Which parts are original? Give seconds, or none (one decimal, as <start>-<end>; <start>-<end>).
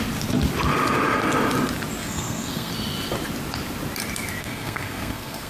0.0-2.0; 2.7-4.4